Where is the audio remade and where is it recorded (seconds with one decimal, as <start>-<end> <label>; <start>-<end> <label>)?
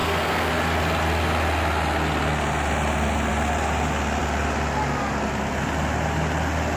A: 0.0-0.5 remade; 0.5-6.8 recorded